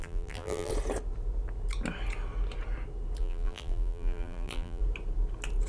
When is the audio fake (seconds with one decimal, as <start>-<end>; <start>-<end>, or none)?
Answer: 0.0-0.7; 3.2-4.8